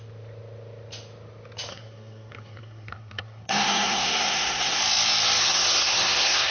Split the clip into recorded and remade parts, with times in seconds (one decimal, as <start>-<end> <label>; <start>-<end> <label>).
0.0-1.7 recorded; 1.7-4.8 remade; 4.8-5.4 recorded; 5.4-6.5 remade